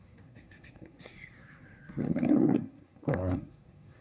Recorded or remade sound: remade